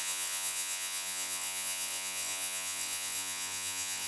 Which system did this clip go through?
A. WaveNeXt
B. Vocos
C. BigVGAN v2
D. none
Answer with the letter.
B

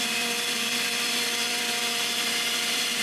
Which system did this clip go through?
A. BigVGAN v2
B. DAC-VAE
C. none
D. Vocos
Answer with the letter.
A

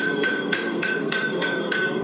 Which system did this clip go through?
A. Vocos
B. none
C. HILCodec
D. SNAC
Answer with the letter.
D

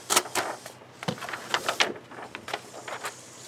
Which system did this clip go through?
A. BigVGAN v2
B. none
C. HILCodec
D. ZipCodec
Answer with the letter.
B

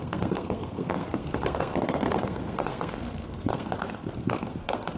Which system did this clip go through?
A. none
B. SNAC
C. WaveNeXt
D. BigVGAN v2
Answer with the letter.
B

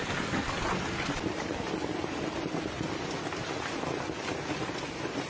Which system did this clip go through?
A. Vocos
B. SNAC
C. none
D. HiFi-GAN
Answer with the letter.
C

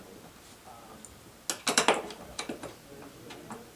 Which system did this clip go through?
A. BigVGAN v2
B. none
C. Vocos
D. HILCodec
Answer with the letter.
B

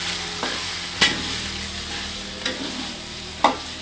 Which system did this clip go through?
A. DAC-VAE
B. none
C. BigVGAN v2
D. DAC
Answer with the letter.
B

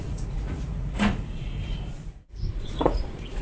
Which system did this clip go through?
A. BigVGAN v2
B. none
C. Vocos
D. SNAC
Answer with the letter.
C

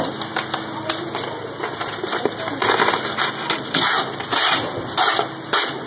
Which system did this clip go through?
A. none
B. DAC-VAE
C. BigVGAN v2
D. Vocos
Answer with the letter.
A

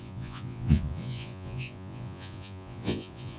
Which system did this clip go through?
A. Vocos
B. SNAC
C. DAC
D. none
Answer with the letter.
A